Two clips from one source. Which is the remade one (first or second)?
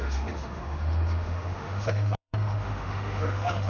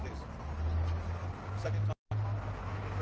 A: first